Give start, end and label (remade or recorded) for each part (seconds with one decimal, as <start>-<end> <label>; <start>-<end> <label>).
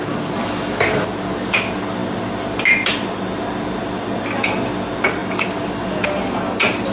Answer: 0.0-6.9 recorded